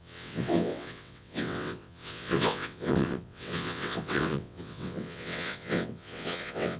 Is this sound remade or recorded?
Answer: remade